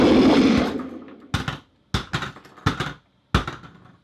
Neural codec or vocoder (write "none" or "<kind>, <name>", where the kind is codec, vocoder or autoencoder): none